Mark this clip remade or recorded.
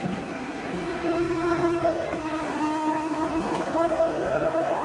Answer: remade